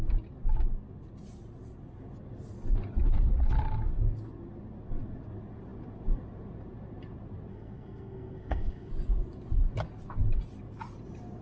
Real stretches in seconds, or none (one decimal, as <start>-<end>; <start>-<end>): 0.0-7.5; 8.9-11.4